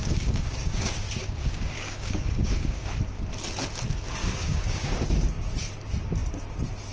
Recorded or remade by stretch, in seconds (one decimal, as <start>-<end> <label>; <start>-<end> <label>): 0.0-2.9 remade; 2.9-4.2 recorded; 4.2-5.0 remade; 5.0-6.9 recorded